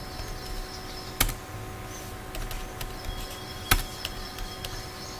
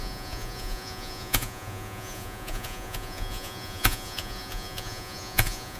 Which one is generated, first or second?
second